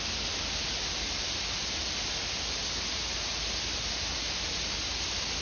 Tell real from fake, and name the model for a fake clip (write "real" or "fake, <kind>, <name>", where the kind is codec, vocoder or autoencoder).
real